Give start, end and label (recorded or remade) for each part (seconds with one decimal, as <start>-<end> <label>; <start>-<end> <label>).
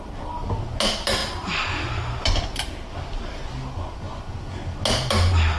0.0-5.6 recorded